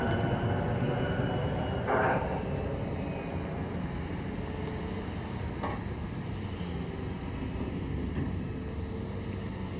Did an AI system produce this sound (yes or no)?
no